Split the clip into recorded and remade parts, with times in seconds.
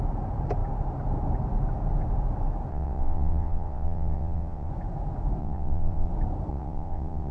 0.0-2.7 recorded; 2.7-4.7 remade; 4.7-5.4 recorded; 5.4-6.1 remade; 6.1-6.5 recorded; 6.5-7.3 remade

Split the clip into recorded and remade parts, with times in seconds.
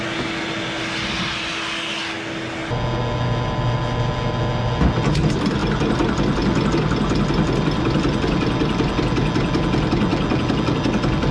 0.0-11.3 recorded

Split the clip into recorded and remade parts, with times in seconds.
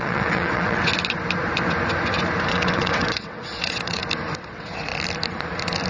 0.0-0.9 remade; 0.9-2.5 recorded; 2.5-4.0 remade; 4.0-4.5 recorded; 4.5-4.9 remade; 4.9-5.9 recorded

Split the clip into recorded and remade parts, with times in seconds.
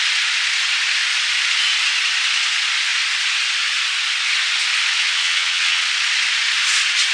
0.0-4.9 recorded; 4.9-5.9 remade; 5.9-7.1 recorded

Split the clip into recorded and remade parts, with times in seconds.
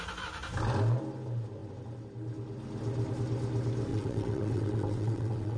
0.0-3.9 recorded; 3.9-5.6 remade